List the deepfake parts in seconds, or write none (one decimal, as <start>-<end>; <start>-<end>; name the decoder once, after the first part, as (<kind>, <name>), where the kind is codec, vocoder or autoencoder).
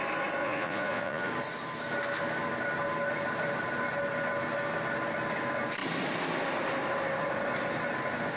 0.4-1.3 (vocoder, Vocos)